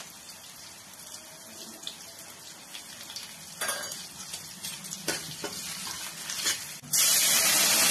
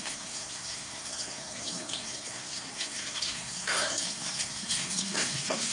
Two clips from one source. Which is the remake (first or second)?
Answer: second